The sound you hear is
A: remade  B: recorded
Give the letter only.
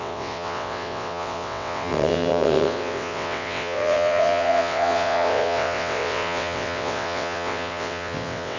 A